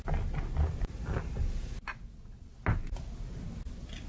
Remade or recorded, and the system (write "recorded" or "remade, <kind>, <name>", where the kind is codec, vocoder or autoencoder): recorded